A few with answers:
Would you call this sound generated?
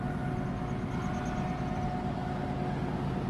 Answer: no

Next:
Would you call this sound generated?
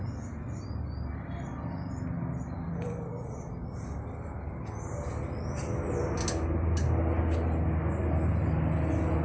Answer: no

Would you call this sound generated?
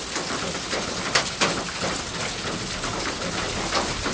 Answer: no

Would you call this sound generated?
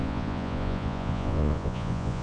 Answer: yes